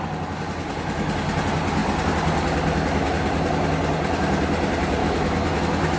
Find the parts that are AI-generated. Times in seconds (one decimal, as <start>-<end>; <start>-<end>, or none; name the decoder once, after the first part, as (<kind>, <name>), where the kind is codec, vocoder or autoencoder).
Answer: 5.0-5.6 (autoencoder, DAC-VAE)